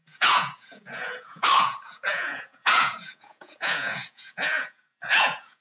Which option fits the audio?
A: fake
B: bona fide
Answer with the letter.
A